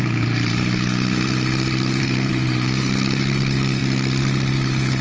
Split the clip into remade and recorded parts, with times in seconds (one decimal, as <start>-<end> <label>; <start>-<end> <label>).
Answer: 0.0-3.8 remade; 3.8-4.5 recorded; 4.5-5.0 remade